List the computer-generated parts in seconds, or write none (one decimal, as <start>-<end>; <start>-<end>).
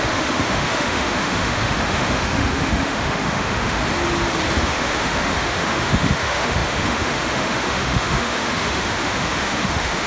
0.0-3.8; 4.6-10.1